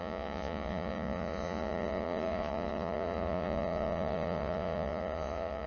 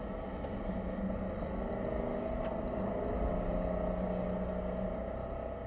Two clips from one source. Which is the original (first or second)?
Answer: second